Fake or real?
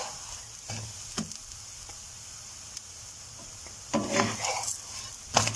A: real